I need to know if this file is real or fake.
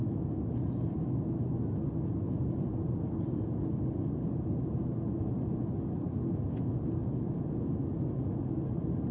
real